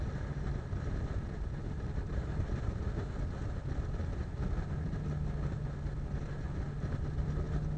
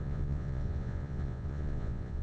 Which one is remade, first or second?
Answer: second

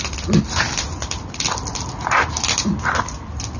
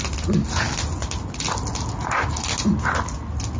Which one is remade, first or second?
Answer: first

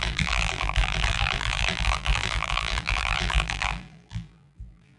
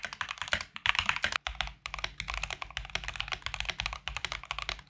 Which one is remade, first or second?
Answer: first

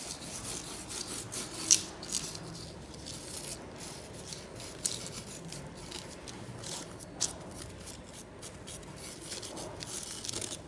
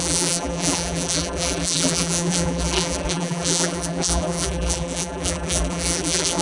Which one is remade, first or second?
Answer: second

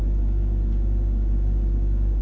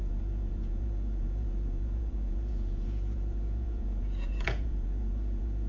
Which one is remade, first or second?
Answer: second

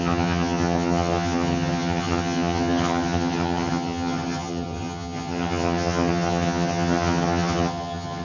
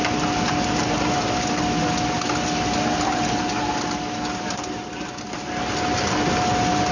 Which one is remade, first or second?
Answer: first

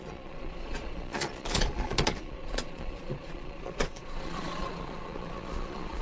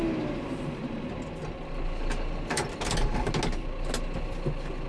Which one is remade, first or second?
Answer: first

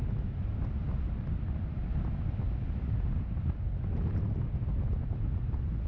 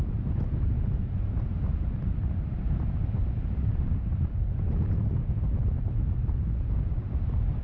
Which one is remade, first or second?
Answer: second